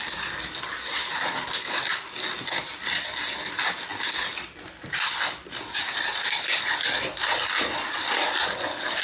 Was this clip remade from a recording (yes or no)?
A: no